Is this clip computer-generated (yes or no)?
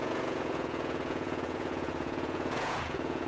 yes